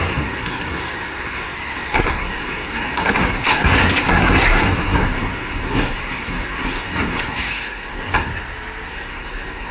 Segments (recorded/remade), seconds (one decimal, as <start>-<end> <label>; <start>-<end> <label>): 0.0-8.3 remade; 8.3-8.9 recorded; 8.9-9.7 remade